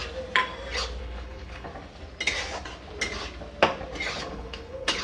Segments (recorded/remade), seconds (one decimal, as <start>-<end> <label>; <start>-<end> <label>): 0.0-1.0 recorded; 1.0-1.7 remade; 1.7-4.2 recorded; 4.2-5.0 remade